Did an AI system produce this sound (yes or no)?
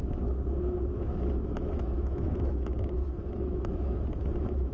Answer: yes